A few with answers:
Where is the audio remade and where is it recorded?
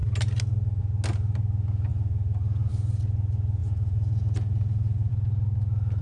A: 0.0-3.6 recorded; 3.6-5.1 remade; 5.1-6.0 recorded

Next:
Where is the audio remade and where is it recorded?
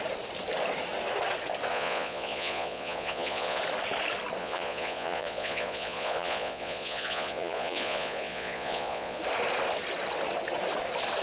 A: 0.0-1.7 recorded; 1.7-3.6 remade; 3.6-4.4 recorded; 4.4-9.2 remade; 9.2-11.2 recorded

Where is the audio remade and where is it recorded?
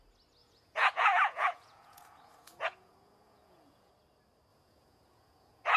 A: 0.0-0.4 recorded; 0.4-3.9 remade; 3.9-4.5 recorded; 4.5-5.8 remade